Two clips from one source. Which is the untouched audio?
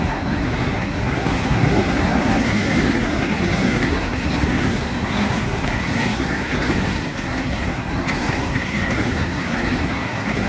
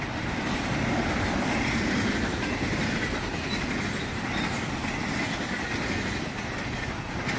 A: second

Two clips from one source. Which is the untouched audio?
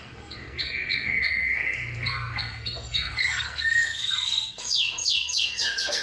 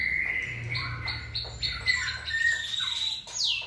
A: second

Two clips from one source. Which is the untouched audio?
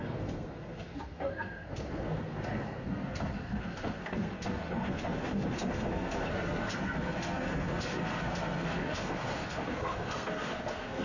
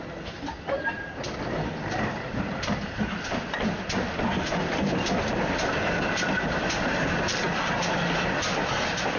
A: second